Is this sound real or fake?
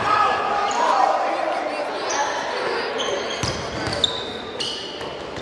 real